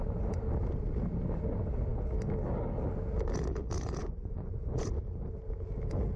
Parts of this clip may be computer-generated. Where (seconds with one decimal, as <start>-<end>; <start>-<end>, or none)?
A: 4.0-4.9